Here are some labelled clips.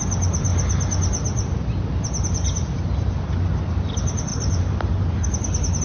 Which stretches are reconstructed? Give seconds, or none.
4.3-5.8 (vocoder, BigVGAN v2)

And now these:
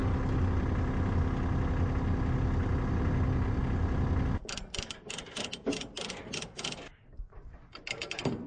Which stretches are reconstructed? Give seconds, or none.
none

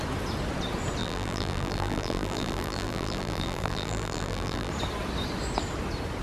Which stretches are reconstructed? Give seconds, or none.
1.0-4.7 (vocoder, BigVGAN v2)

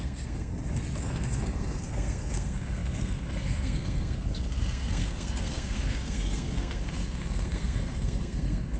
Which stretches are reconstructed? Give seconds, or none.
0.0-0.5 (codec, SNAC); 1.0-8.8

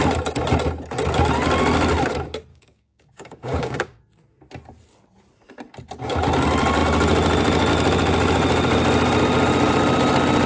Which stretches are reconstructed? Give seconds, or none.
2.5-4.0 (codec, DAC)